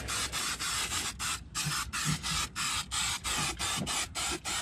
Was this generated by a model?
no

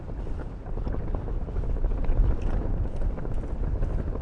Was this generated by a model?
no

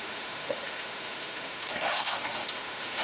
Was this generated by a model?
yes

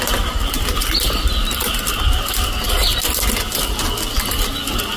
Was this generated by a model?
no